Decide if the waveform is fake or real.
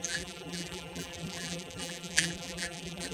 fake